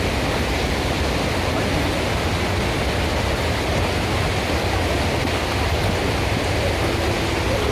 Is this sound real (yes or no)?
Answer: yes